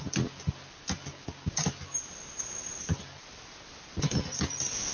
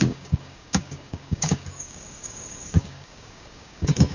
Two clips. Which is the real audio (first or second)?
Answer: first